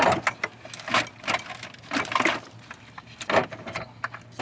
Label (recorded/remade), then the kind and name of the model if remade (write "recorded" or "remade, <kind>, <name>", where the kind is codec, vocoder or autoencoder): recorded